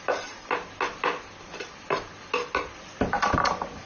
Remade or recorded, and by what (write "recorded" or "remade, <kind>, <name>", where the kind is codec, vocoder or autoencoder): recorded